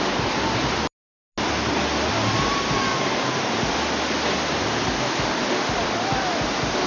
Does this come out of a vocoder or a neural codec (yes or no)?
no